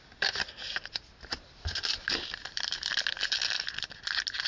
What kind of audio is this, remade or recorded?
recorded